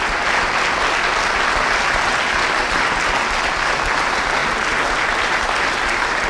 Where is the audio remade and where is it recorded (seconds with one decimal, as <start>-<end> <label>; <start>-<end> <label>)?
0.0-6.3 recorded